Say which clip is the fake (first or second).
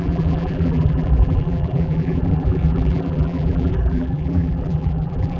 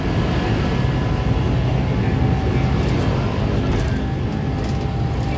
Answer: first